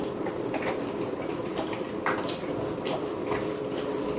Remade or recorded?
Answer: recorded